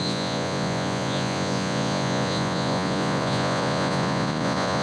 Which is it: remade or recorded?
remade